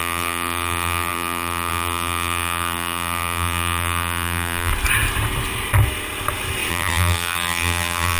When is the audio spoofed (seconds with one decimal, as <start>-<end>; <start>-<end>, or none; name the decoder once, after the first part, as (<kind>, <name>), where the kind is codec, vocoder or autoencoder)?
0.0-4.7 (vocoder, BigVGAN v2); 6.7-8.2